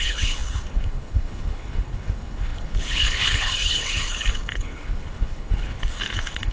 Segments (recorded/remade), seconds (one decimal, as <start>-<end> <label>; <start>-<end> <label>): 0.0-6.5 remade